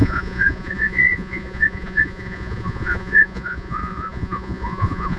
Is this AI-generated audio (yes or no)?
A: yes